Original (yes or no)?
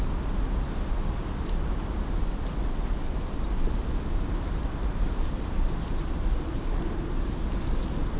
yes